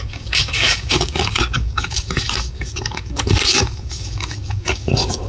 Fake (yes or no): yes